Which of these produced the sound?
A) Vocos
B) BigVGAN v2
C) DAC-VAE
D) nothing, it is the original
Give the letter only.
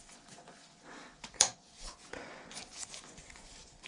A